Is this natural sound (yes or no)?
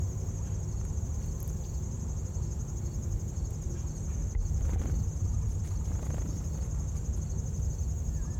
yes